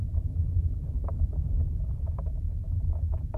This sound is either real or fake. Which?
fake